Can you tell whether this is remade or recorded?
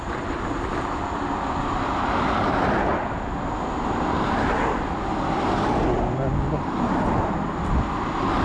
recorded